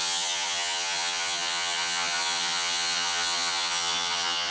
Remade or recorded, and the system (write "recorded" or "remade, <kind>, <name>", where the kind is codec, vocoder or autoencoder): remade, vocoder, HiFi-GAN